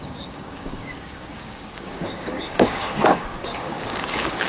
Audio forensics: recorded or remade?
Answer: remade